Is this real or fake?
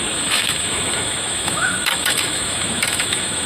fake